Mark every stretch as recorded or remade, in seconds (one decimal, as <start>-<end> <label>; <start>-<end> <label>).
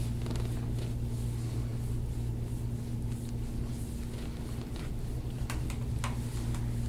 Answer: 0.0-6.9 recorded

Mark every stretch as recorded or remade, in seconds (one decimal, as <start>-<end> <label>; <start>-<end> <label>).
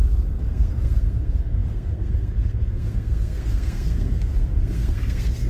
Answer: 0.0-5.5 remade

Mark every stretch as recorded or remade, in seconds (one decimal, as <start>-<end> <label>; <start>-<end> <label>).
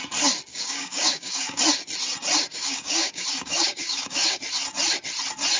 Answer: 0.0-0.5 recorded; 0.5-1.6 remade; 1.6-2.5 recorded; 2.5-4.4 remade; 4.4-5.6 recorded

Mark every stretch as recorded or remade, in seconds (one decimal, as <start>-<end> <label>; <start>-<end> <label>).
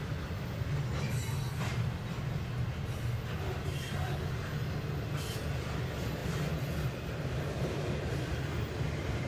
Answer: 0.0-9.3 recorded